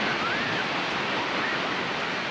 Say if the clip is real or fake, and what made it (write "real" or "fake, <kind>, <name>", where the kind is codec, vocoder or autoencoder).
real